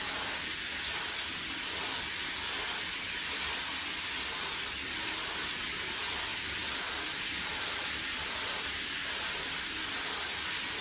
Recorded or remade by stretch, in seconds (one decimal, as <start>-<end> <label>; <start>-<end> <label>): 0.0-6.6 recorded; 6.6-9.7 remade; 9.7-10.8 recorded